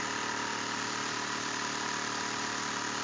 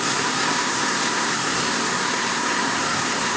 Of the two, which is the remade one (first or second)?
second